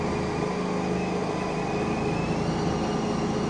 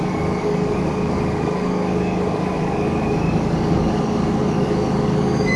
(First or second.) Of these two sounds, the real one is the first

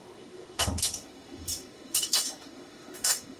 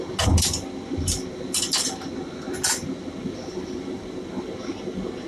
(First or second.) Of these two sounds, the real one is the second